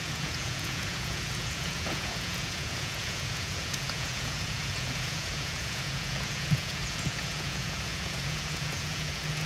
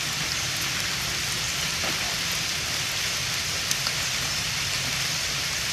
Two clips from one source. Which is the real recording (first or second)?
second